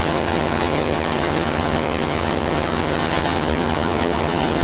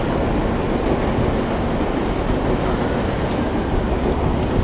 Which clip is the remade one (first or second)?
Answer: first